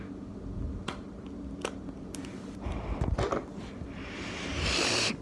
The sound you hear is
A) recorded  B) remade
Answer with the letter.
A